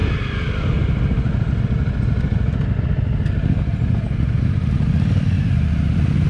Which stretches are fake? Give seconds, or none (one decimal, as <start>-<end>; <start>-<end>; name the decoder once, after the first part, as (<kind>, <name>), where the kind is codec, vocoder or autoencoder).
none